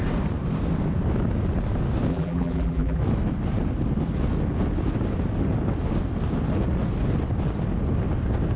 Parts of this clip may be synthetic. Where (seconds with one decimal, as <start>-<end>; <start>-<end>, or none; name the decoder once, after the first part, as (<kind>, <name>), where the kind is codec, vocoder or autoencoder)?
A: 2.1-3.0 (vocoder, BigVGAN v2)